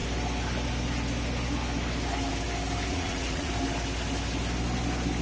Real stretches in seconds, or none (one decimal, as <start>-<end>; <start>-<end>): 0.0-2.9; 3.5-5.2